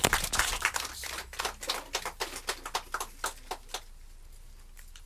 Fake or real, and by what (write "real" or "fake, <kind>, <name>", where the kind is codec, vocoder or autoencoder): real